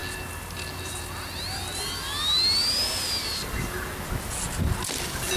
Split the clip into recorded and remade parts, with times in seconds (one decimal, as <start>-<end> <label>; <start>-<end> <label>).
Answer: 0.0-5.4 recorded